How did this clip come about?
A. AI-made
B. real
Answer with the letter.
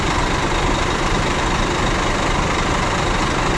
B